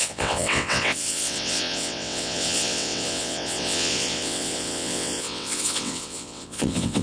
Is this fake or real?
fake